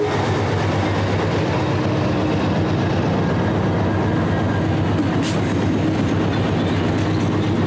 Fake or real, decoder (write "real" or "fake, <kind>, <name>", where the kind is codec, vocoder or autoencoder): real